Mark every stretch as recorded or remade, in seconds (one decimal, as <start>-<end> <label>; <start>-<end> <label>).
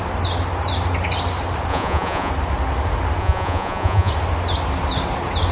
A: 0.0-1.7 recorded; 1.7-2.3 remade; 2.3-3.2 recorded; 3.2-4.1 remade; 4.1-5.5 recorded